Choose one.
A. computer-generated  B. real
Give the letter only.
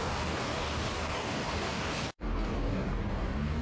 A